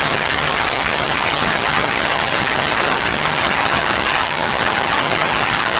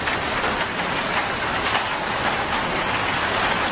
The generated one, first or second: first